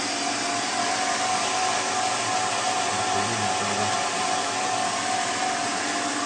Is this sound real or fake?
real